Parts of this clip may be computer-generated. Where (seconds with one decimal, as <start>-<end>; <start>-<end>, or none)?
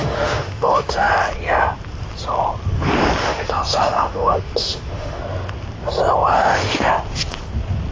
0.0-1.1; 3.2-5.2; 6.3-6.9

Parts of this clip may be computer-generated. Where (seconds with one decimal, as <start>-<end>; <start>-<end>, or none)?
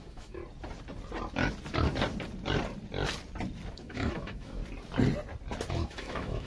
0.0-0.4; 3.7-4.6; 5.7-6.5